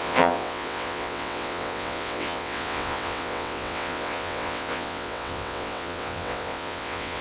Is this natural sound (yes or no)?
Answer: no